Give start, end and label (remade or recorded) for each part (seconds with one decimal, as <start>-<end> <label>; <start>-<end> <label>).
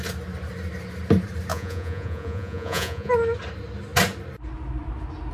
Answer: 0.0-1.5 recorded; 1.5-3.1 remade; 3.1-5.3 recorded